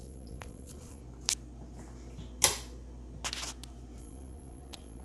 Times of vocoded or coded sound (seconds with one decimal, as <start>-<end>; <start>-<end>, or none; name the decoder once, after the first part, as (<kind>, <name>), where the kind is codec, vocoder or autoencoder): 0.0-1.0 (vocoder, Vocos); 4.0-5.0